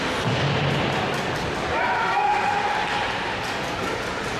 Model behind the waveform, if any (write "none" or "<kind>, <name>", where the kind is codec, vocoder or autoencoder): none